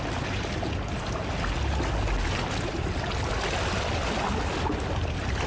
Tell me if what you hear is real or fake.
real